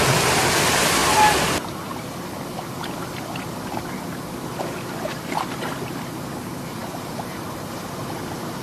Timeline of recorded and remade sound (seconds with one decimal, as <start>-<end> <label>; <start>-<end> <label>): 0.0-6.8 recorded; 6.8-8.6 remade